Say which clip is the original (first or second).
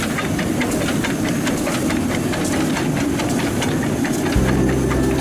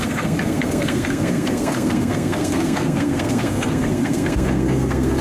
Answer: first